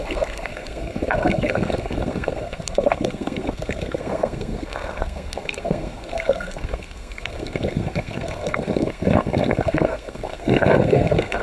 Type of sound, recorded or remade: remade